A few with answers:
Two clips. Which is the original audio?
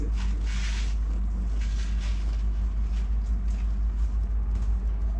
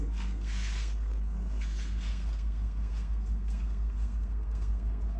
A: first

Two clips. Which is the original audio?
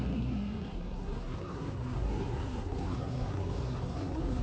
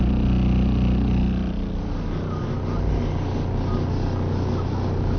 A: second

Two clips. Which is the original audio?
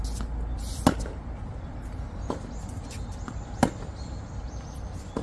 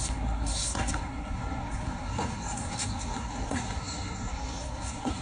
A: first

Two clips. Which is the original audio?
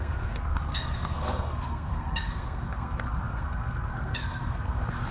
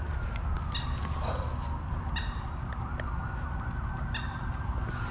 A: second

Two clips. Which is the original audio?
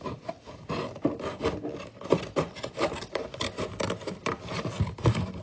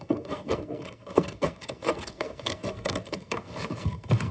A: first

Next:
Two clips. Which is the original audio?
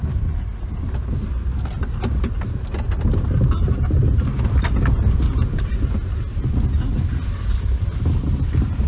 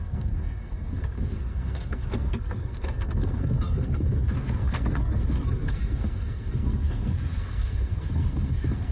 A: first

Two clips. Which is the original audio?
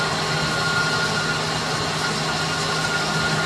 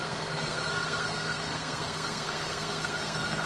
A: first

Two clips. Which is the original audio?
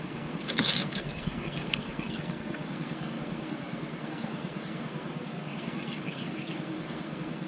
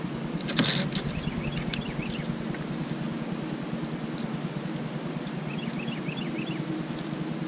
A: second